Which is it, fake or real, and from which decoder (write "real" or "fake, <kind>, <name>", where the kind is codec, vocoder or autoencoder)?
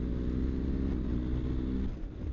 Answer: real